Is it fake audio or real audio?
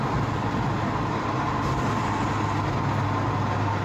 real